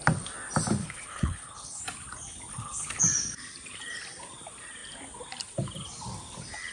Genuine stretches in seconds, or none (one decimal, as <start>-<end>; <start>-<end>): 0.0-0.8; 1.8-2.5; 3.0-6.7